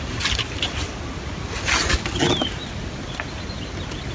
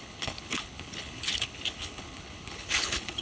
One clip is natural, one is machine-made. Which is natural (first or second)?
first